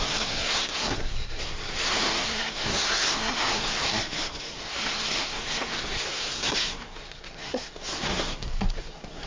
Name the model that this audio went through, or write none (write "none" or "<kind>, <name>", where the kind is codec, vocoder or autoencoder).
codec, SNAC